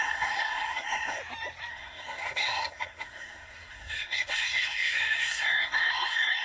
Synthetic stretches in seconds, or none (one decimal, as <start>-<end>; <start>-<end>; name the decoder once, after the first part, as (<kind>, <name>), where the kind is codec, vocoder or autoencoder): 0.0-1.2 (codec, SNAC); 1.7-6.4

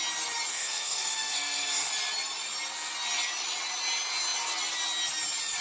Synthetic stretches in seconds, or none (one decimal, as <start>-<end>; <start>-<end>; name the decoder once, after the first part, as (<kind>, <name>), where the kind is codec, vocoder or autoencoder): 0.5-1.9 (codec, SNAC)

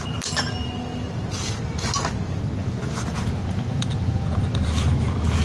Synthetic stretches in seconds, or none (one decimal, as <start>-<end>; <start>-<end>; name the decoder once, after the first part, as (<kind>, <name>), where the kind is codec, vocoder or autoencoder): 2.6-4.4 (vocoder, Vocos)

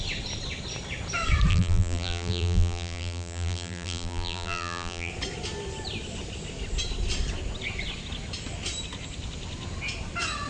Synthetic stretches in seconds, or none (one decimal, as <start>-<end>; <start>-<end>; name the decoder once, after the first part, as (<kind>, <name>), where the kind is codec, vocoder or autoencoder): 1.5-5.1 (vocoder, BigVGAN v2)

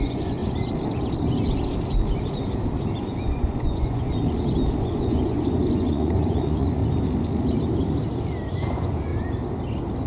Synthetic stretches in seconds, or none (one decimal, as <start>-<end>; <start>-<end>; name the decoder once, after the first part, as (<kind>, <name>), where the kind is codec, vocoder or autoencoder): 0.0-0.4 (vocoder, Vocos); 3.0-4.1; 4.8-6.8; 8.5-9.1

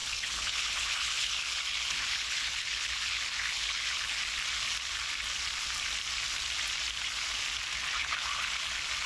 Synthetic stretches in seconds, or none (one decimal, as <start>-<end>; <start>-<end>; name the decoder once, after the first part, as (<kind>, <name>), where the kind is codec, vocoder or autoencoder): 0.0-4.2 (codec, HILCodec); 8.0-8.6